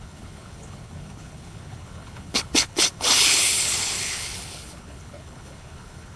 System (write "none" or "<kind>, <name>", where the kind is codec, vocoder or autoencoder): codec, HILCodec